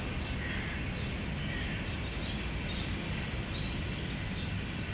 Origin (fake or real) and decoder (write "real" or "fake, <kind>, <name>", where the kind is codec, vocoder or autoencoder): real